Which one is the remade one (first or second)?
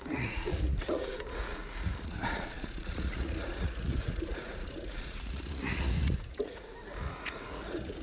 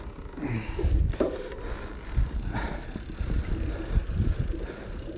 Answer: first